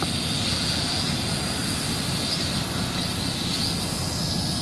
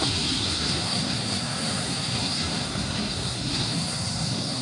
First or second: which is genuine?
first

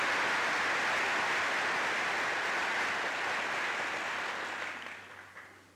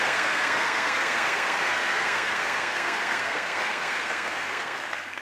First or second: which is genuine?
first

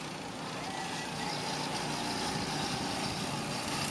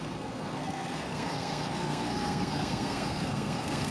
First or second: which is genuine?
first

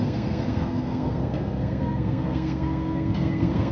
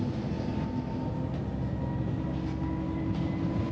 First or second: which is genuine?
second